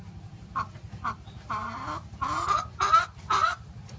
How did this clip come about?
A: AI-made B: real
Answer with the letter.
B